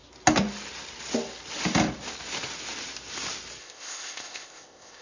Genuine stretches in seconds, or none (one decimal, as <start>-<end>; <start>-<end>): 0.0-3.6